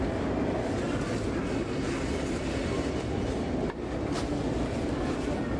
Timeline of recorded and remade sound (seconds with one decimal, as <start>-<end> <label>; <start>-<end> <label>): 0.0-5.6 recorded